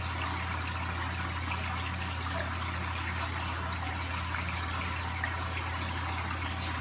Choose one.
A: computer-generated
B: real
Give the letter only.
B